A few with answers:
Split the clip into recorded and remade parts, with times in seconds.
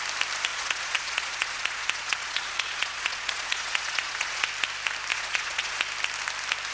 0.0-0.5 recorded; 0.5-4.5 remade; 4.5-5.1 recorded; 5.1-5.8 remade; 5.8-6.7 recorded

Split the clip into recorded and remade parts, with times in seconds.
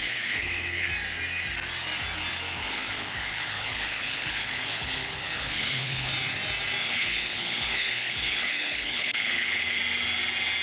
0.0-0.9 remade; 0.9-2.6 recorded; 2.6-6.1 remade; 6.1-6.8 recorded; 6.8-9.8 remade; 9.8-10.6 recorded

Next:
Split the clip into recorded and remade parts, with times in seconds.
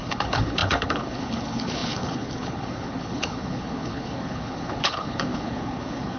0.0-6.2 remade